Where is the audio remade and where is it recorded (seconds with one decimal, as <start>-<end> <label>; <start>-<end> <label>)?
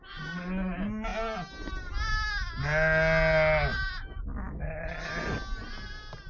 0.0-6.3 recorded